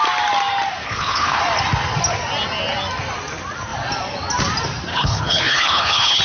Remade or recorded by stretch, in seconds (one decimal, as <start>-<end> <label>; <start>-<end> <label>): 0.0-0.8 recorded; 0.8-1.4 remade; 1.4-4.9 recorded; 4.9-6.2 remade